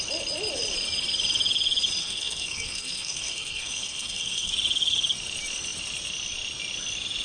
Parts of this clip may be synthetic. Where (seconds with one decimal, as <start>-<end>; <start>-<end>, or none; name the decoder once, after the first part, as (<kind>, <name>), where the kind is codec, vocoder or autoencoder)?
2.0-4.5 (codec, SNAC)